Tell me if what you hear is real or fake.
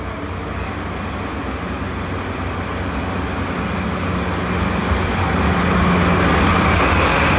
real